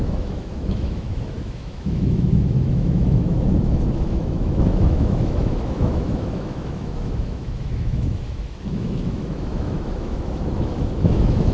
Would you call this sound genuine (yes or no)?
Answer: no